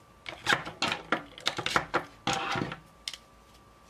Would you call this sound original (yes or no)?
yes